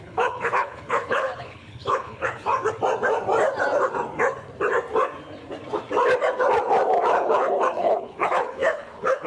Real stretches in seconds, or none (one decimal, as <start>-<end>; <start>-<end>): 2.5-7.1